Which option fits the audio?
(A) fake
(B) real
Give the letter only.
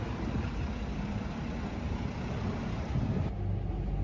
B